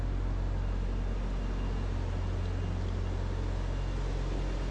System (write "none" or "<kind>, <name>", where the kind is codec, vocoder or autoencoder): none